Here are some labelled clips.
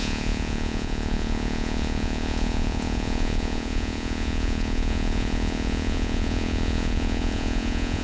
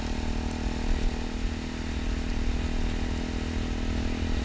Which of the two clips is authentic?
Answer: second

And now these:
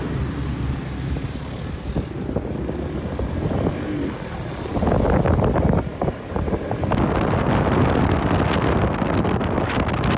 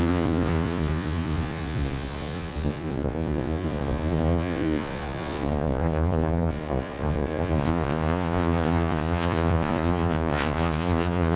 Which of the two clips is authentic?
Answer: first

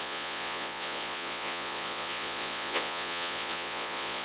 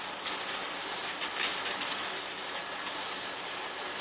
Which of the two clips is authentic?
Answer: second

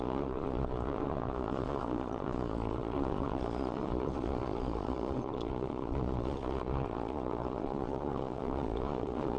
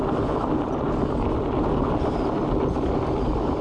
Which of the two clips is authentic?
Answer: second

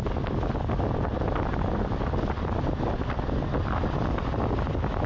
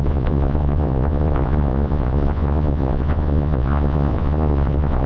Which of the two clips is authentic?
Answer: first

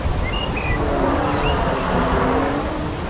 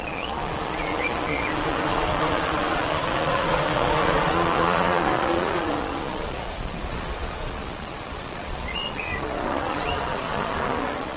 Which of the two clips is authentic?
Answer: first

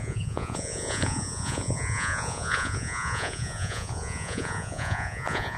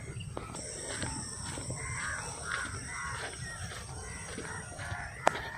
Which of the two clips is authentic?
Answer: second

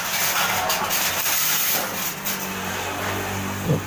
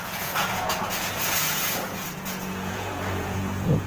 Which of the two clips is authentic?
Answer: first